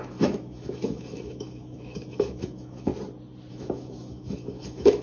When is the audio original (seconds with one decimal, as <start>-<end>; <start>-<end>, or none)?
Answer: 2.9-3.5